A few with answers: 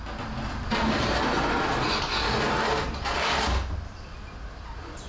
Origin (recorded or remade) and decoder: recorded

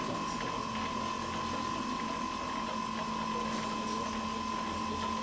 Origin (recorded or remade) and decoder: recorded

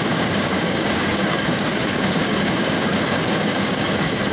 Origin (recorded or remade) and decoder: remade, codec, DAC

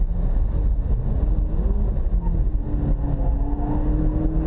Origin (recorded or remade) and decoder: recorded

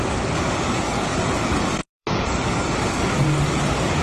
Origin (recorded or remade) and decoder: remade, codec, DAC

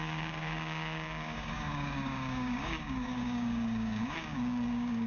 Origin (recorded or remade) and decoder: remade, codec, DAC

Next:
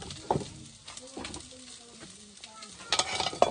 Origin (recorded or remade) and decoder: recorded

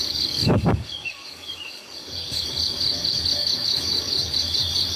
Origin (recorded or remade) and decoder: remade, codec, DAC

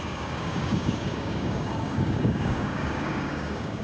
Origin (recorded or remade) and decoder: remade, codec, DAC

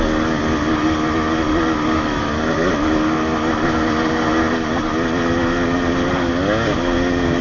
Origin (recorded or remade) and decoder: recorded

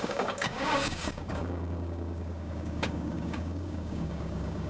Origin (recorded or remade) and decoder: remade, codec, DAC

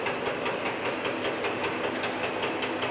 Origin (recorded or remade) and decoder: recorded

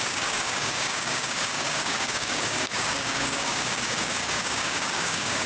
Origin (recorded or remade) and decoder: remade, codec, DAC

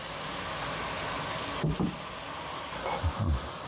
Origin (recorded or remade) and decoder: recorded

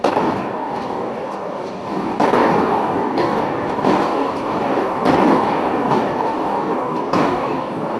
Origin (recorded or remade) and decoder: remade, codec, DAC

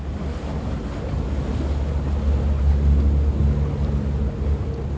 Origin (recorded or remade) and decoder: recorded